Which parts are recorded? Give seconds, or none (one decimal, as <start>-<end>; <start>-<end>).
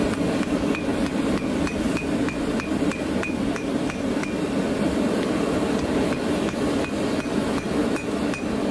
0.0-0.9; 6.0-8.7